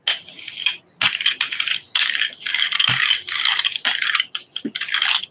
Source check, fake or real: real